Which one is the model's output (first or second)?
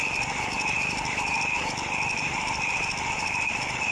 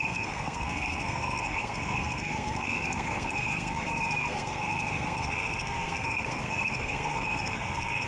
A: second